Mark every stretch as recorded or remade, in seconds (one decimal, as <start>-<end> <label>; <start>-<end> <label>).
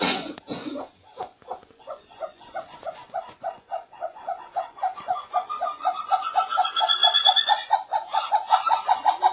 0.0-9.3 remade